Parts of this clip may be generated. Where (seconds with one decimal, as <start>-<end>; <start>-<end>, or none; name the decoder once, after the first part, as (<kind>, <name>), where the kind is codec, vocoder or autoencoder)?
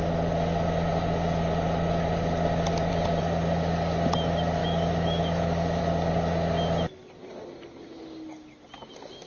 4.6-5.8 (autoencoder, DAC-VAE)